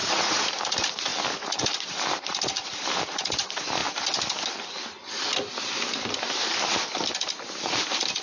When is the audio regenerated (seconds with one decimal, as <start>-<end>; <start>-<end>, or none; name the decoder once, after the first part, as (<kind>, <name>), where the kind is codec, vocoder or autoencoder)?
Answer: 0.0-0.5 (vocoder, Vocos)